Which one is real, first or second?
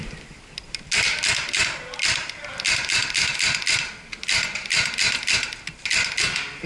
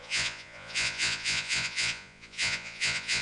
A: first